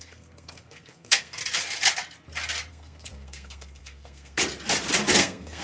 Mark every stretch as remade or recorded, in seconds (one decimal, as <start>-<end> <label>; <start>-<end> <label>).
0.0-1.4 remade; 1.4-2.7 recorded; 2.7-4.4 remade; 4.4-5.1 recorded; 5.1-5.6 remade